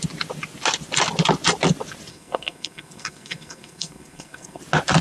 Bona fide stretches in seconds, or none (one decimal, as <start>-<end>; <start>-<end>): 0.0-2.1; 4.6-5.0